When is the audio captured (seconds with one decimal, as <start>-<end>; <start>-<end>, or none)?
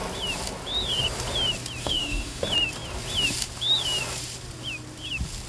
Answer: 0.0-1.8; 2.4-5.5